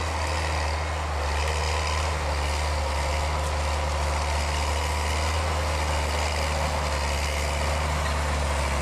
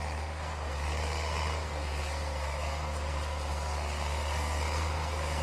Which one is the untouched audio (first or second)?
first